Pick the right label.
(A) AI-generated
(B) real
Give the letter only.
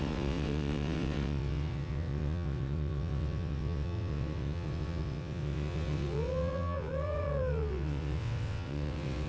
A